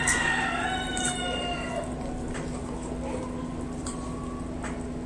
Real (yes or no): yes